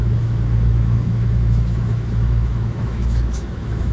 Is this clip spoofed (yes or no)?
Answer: yes